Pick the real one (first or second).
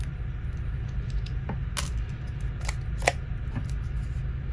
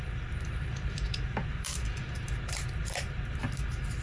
first